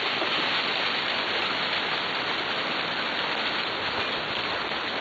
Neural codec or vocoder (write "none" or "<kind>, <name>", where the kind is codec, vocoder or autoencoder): none